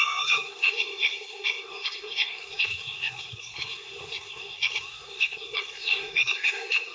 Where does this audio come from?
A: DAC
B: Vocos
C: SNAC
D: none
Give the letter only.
C